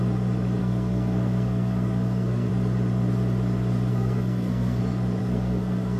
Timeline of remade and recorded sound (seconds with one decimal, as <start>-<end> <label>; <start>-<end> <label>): 0.0-0.6 recorded; 0.6-2.5 remade; 2.5-3.9 recorded; 3.9-4.8 remade; 4.8-5.2 recorded; 5.2-6.0 remade